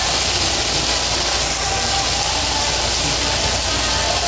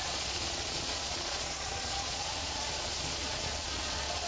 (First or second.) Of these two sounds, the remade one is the second